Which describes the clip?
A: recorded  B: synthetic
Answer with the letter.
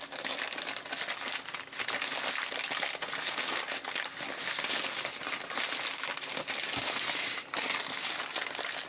A